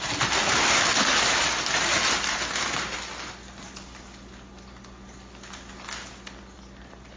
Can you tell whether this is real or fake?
real